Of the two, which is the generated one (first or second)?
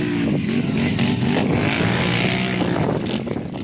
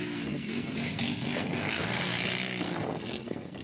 second